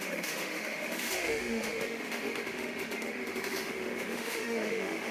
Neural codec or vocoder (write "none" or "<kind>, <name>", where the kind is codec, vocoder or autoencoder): autoencoder, DAC-VAE